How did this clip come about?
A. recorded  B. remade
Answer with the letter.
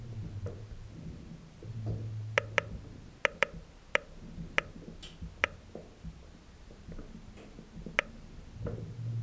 A